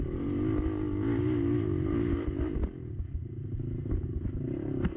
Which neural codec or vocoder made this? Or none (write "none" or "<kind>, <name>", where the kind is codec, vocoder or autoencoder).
none